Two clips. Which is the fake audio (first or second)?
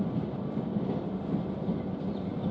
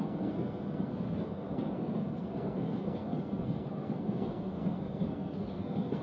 second